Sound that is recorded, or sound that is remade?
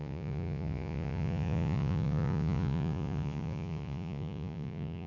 remade